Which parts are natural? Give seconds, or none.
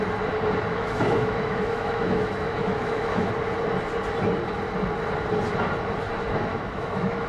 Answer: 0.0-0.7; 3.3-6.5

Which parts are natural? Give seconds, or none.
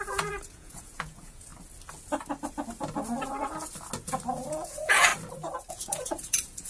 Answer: 1.5-4.5; 5.1-5.7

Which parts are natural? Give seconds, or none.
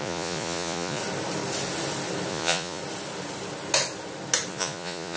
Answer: 1.0-2.3; 2.8-4.5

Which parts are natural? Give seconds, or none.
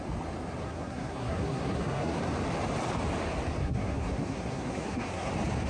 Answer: 0.0-0.6; 2.2-3.6; 5.3-5.7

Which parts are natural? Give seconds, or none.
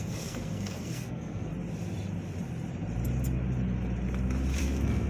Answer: 1.5-4.6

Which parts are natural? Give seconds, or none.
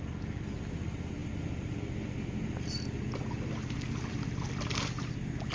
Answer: 0.0-5.5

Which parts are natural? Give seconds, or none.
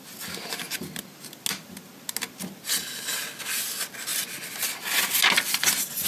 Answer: 0.0-6.1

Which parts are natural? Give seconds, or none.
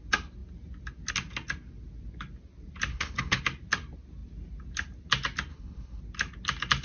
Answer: 0.0-2.9; 3.4-5.5; 6.0-6.8